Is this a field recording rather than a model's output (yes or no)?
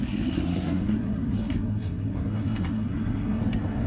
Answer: no